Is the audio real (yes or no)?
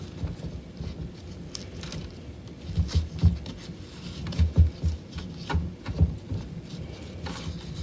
yes